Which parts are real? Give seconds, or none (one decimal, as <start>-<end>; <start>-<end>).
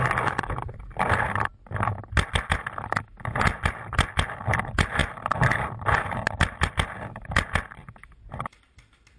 0.0-9.2